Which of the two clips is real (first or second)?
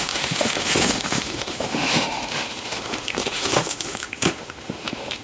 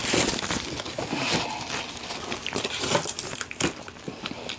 second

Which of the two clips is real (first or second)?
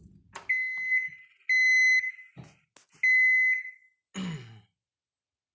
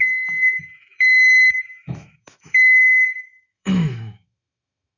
first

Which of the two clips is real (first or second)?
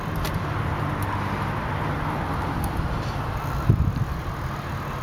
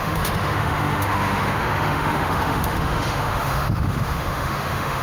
first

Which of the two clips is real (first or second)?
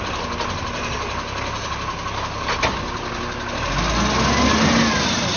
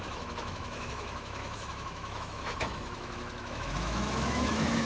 first